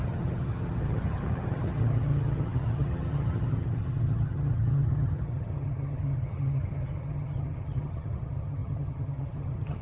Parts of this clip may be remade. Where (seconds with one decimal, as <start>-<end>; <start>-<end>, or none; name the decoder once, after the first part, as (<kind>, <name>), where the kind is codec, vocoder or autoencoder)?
0.0-9.8 (vocoder, HiFi-GAN)